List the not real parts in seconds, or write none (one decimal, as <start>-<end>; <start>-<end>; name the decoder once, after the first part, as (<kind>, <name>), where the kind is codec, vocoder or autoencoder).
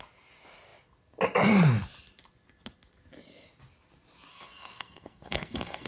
4.3-5.9 (codec, SNAC)